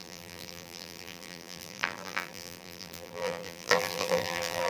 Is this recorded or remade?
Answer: remade